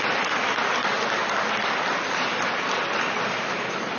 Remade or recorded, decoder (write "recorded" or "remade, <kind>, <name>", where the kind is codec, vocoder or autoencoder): recorded